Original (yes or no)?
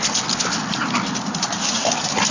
yes